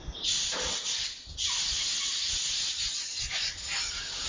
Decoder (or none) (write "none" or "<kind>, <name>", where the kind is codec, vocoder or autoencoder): none